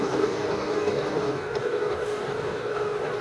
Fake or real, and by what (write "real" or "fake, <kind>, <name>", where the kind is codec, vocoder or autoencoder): fake, codec, DAC